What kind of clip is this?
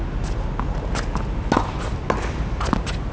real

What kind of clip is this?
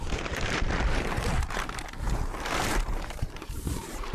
fake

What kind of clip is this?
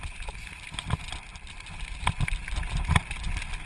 real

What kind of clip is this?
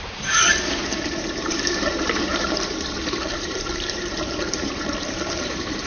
fake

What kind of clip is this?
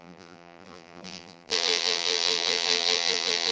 fake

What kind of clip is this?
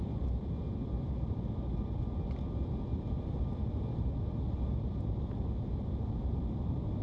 real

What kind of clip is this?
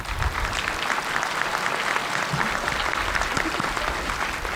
real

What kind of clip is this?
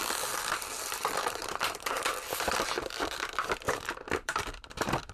fake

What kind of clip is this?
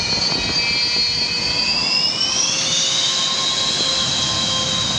real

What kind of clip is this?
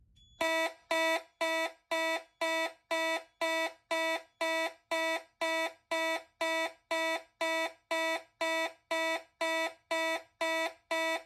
real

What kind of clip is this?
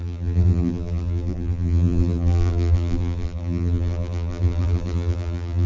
fake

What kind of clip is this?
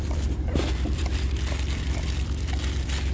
fake